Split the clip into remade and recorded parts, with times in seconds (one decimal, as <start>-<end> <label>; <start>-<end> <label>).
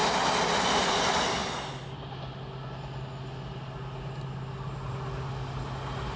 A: 0.0-6.2 recorded